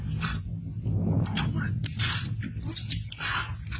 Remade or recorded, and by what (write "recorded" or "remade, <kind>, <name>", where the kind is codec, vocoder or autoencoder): recorded